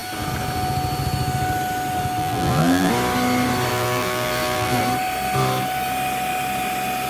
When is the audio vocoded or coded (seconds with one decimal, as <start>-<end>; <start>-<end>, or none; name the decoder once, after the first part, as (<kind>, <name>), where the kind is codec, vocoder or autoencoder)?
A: 2.2-2.9 (vocoder, BigVGAN v2); 3.7-4.8